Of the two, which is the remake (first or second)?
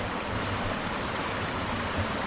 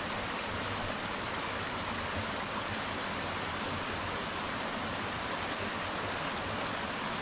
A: first